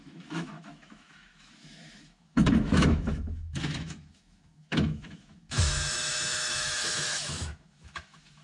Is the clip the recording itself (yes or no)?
no